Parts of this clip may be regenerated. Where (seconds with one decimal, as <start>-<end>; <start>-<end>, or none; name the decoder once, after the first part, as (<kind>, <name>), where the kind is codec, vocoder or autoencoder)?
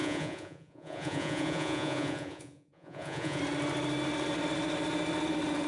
0.0-3.4 (vocoder, Vocos)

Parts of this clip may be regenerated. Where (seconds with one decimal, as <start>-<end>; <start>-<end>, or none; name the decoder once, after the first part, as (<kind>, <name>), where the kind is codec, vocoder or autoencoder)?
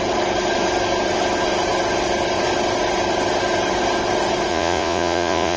4.5-5.6 (vocoder, Vocos)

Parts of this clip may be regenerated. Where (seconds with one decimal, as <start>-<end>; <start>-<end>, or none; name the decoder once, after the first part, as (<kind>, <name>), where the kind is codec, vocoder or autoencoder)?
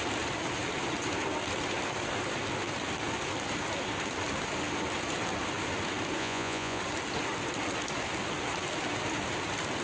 6.2-6.8 (vocoder, Vocos)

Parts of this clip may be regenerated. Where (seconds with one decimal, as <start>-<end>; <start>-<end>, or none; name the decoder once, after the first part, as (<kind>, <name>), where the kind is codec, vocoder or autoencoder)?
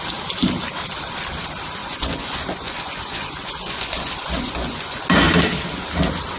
1.8-5.0 (vocoder, Vocos)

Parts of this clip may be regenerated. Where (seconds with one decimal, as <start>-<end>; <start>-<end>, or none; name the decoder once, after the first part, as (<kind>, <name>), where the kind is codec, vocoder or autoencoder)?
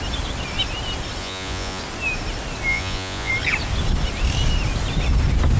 1.2-1.8 (vocoder, Vocos); 2.7-3.3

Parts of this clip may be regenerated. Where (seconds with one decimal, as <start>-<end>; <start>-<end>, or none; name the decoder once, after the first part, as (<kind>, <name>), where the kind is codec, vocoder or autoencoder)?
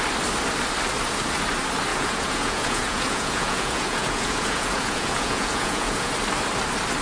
1.9-6.1 (vocoder, Vocos)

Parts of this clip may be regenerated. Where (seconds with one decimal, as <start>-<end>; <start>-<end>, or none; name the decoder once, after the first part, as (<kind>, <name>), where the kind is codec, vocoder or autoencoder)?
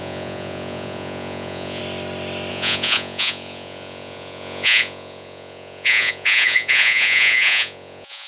0.0-1.8 (vocoder, Vocos); 2.5-8.3